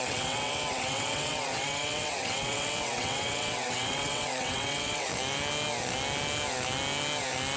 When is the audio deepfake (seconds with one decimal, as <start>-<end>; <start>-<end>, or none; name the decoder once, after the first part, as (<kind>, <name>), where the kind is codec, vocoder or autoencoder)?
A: 0.0-5.1 (vocoder, WaveNeXt)

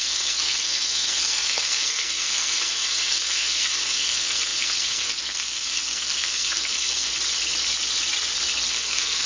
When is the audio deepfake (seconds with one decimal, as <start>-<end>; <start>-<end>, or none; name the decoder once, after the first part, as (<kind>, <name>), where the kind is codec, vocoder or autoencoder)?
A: 0.0-7.1 (codec, SNAC); 8.7-9.3

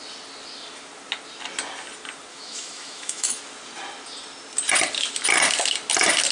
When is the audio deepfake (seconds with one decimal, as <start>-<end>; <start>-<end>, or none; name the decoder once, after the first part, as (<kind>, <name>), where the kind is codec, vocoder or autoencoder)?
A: 2.3-3.4 (autoencoder, DAC-VAE)

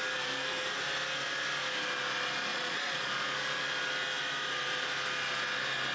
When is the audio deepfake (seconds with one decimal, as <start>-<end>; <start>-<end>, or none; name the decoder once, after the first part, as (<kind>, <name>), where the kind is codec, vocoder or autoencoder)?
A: 2.5-3.1 (vocoder, Vocos)

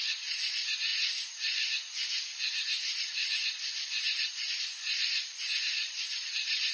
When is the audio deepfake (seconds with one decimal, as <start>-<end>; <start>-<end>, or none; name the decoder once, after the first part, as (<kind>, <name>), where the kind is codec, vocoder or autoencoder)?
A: none

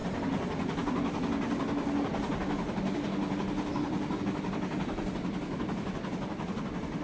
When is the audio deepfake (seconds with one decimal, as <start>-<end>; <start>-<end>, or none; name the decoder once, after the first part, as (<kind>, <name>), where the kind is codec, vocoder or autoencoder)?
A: none

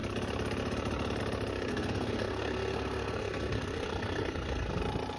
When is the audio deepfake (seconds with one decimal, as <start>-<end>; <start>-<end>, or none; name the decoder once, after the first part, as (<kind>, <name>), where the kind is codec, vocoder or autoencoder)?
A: 1.7-4.8 (codec, SNAC)

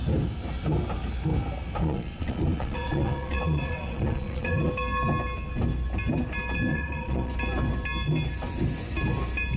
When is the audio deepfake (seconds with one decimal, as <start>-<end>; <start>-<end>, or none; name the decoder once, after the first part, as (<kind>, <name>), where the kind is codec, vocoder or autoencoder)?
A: 1.8-4.7 (vocoder, Vocos); 6.7-7.3